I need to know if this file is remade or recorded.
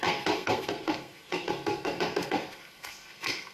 remade